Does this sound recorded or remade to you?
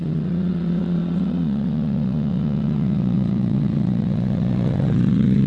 remade